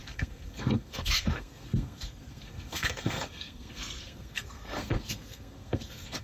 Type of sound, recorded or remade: remade